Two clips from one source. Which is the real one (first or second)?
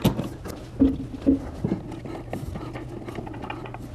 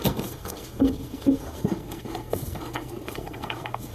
first